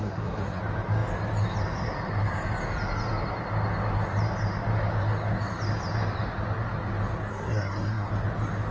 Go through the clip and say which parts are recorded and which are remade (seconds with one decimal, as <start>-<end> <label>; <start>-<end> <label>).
0.0-0.6 remade; 0.6-7.3 recorded; 7.3-8.1 remade; 8.1-8.7 recorded